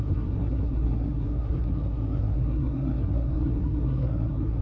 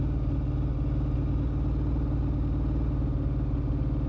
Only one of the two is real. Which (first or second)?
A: second